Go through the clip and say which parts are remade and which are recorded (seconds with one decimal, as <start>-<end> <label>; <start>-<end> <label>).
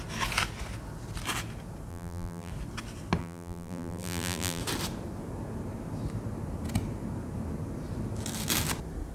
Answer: 0.0-1.9 recorded; 1.9-2.5 remade; 2.5-3.2 recorded; 3.2-4.6 remade; 4.6-9.1 recorded